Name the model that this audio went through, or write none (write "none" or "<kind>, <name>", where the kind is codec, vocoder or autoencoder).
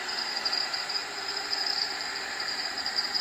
vocoder, BigVGAN v2